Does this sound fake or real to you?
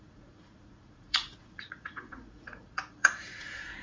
fake